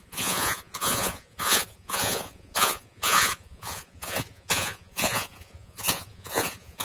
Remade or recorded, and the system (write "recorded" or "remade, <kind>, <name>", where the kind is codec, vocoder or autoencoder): remade, vocoder, Vocos